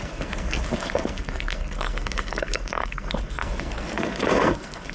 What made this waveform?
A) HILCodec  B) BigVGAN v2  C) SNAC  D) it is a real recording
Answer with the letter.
C